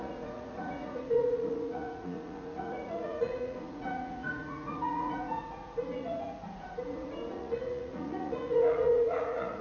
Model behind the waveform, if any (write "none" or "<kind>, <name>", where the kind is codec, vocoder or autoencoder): vocoder, Vocos